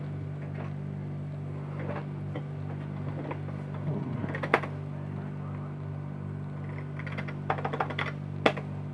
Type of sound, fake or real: real